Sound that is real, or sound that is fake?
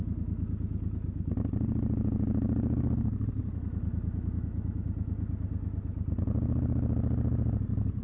real